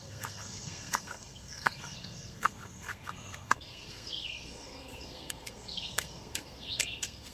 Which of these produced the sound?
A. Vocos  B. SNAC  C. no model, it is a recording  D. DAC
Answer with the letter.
B